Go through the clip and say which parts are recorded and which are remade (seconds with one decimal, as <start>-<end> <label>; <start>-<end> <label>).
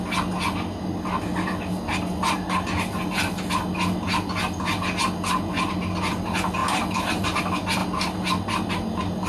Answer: 0.0-9.3 recorded